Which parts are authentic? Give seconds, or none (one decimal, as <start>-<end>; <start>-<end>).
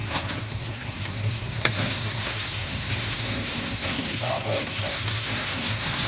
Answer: none